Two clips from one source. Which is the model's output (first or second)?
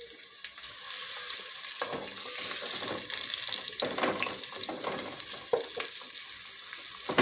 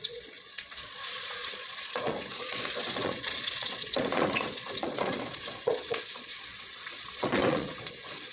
second